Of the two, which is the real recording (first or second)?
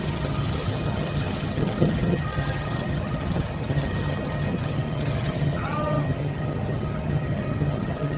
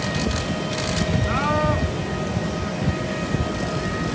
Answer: second